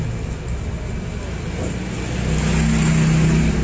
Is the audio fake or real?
real